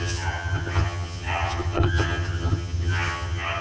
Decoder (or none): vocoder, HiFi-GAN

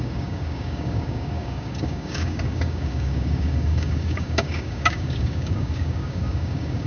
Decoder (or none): codec, DAC